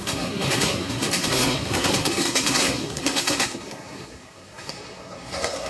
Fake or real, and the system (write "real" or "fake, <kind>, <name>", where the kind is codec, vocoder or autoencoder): fake, codec, SNAC